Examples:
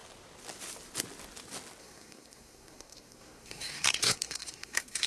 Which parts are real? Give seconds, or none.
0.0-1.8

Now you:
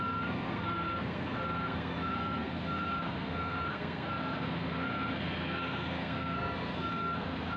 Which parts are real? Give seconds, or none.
none

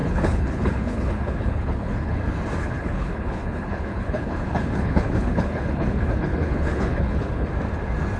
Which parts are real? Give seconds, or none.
2.2-2.6; 7.5-8.2

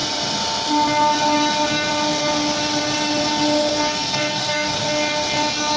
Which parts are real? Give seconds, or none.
0.0-3.7; 4.8-5.8

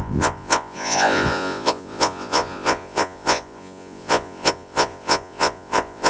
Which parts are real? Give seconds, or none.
none

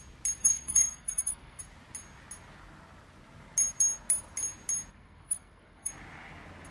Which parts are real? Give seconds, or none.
0.0-0.4; 1.6-4.9; 5.9-6.7

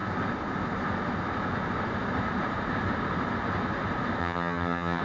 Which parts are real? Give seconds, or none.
0.0-4.2

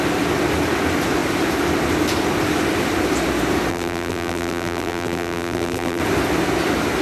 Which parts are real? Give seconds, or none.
0.0-3.7; 6.0-7.0